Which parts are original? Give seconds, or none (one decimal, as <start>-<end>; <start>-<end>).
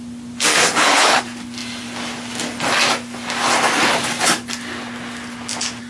0.0-0.5; 1.2-5.9